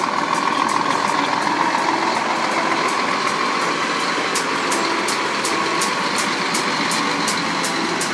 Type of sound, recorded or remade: recorded